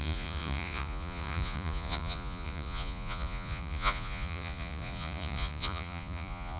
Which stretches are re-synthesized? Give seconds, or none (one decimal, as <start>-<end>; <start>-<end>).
0.0-6.6